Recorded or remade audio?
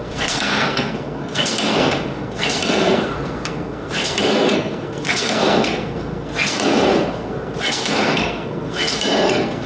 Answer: remade